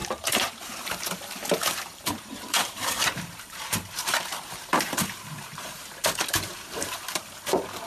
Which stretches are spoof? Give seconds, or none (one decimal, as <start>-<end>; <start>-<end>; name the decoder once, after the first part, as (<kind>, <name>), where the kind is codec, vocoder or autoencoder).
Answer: 0.0-1.1 (vocoder, BigVGAN v2); 1.6-5.9; 6.5-7.9